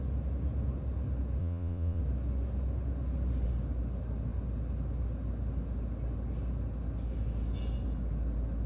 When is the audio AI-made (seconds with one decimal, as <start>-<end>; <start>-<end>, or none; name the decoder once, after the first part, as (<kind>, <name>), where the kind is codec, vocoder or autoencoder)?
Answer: 1.4-2.0 (vocoder, Vocos)